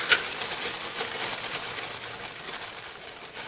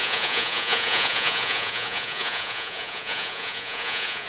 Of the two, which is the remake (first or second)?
second